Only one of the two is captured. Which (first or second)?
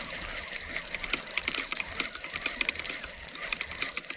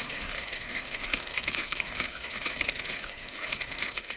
first